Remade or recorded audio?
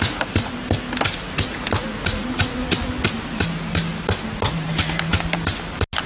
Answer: recorded